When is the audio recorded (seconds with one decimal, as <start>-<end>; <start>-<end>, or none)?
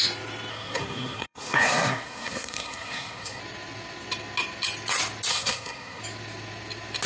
0.0-0.5; 3.4-5.3; 6.0-7.1